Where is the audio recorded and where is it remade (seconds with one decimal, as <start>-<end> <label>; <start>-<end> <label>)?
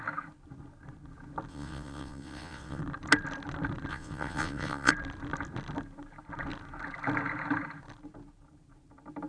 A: 0.0-1.5 recorded; 1.5-2.8 remade; 2.8-3.9 recorded; 3.9-4.9 remade; 4.9-9.3 recorded